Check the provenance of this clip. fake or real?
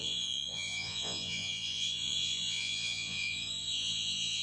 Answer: fake